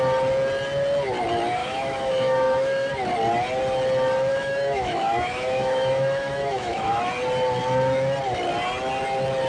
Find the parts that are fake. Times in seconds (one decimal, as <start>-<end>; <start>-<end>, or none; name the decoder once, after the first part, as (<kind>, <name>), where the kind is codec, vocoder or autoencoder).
1.6-2.9 (autoencoder, DAC-VAE); 4.3-7.1